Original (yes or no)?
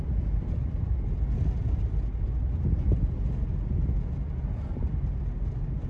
yes